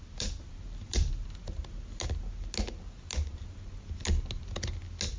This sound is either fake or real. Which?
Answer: real